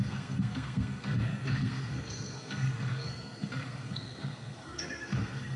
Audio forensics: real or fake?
fake